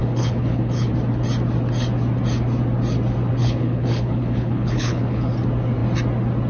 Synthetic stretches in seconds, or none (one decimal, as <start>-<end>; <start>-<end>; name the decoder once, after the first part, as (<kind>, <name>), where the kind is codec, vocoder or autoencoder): 0.0-0.9 (codec, HILCodec); 3.4-5.3